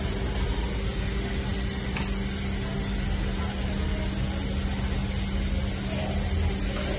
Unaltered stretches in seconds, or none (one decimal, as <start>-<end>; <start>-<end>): 0.0-7.0